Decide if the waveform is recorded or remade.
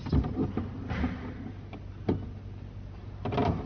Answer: recorded